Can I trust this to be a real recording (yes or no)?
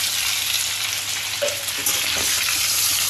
yes